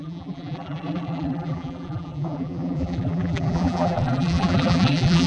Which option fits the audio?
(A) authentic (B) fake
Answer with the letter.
B